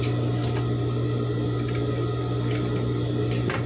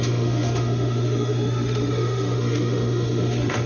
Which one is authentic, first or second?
first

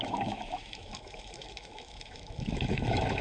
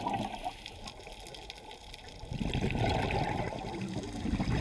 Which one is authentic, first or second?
second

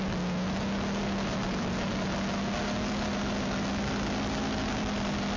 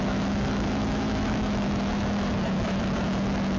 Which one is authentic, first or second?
first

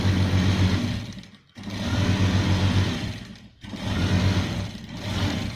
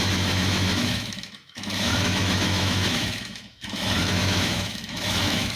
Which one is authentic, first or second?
first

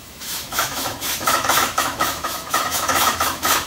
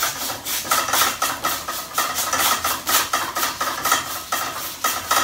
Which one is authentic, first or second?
second